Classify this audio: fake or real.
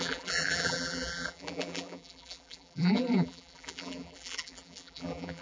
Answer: fake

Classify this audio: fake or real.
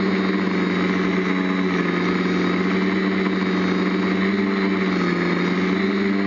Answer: real